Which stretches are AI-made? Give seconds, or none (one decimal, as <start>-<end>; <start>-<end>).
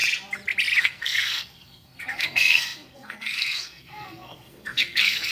0.8-5.3